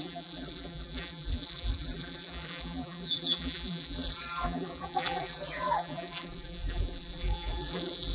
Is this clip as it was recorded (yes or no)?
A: no